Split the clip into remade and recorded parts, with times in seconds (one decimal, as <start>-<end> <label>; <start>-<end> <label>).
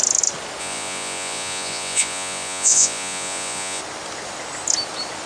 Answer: 0.0-0.6 recorded; 0.6-3.8 remade; 3.8-5.3 recorded